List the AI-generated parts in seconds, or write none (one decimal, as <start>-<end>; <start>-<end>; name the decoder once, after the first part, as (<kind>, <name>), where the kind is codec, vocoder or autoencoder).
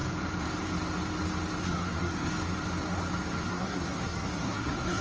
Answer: 1.6-2.3 (codec, SNAC); 3.5-5.0